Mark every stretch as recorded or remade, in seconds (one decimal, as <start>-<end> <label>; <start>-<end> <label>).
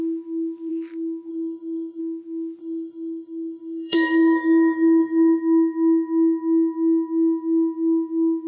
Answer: 0.0-1.3 recorded; 1.3-2.0 remade; 2.0-2.6 recorded; 2.6-5.4 remade; 5.4-8.5 recorded